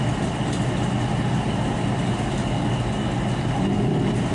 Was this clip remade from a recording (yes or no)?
no